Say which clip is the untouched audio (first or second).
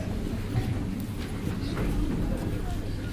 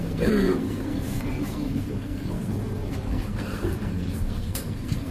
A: first